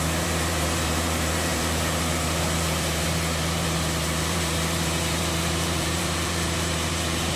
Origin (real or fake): fake